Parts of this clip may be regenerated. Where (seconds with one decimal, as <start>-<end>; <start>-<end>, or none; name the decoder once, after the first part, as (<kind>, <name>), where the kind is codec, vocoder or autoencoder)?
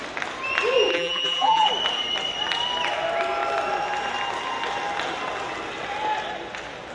0.9-1.7 (vocoder, BigVGAN v2)